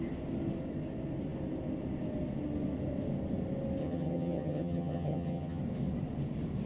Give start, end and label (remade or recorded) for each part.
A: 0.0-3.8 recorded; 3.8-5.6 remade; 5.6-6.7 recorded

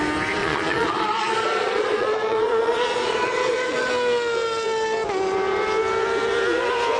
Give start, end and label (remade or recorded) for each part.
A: 0.0-0.4 recorded; 0.4-3.9 remade; 3.9-7.0 recorded

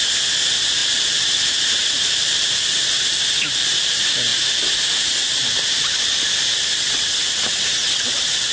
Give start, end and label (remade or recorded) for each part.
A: 0.0-8.5 recorded

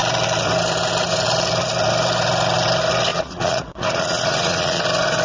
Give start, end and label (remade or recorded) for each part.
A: 0.0-3.1 recorded; 3.1-4.8 remade; 4.8-5.2 recorded

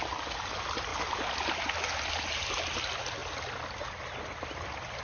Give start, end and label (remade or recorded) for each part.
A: 0.0-5.0 recorded

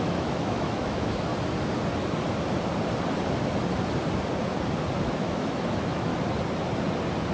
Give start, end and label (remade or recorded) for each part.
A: 0.0-1.3 remade; 1.3-5.0 recorded; 5.0-6.1 remade; 6.1-7.3 recorded